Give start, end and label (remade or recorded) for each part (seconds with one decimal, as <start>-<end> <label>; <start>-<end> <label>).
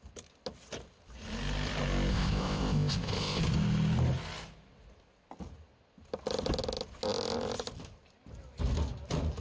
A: 0.0-2.1 recorded; 2.1-3.4 remade; 3.4-9.4 recorded